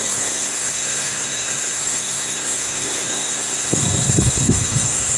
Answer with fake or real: fake